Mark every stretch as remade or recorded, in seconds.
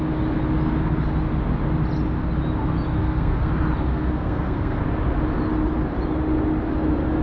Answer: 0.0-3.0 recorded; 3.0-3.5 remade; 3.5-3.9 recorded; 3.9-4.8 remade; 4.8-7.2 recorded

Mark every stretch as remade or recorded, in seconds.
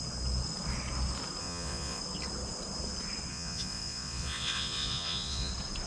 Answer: 0.0-1.4 recorded; 1.4-2.0 remade; 2.0-3.3 recorded; 3.3-5.5 remade; 5.5-5.9 recorded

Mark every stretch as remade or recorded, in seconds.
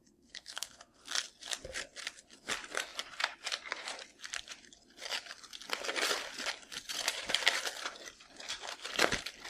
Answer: 0.0-1.0 remade; 1.0-9.5 recorded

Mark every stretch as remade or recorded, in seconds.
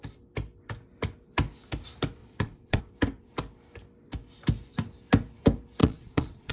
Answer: 0.0-2.2 recorded; 2.2-2.8 remade; 2.8-5.8 recorded; 5.8-6.5 remade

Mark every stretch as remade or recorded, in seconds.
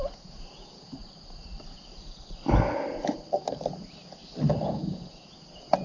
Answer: 0.0-1.0 remade; 1.0-4.5 recorded; 4.5-5.8 remade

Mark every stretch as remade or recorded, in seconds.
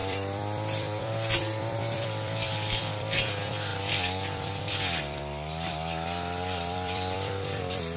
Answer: 0.0-8.0 remade